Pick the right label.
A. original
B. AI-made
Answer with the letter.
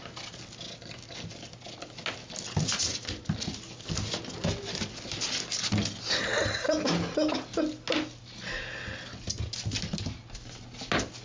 A